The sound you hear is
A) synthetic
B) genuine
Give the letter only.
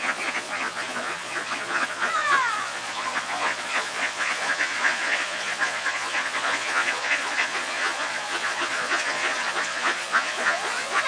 A